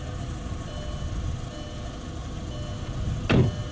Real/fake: real